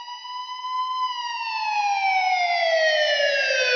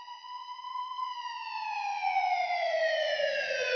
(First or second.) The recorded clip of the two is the first